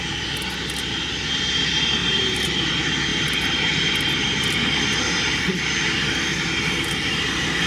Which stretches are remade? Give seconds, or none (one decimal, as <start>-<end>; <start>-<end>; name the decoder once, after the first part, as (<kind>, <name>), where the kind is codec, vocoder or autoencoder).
2.0-2.7 (vocoder, BigVGAN v2); 3.1-3.8; 6.3-6.9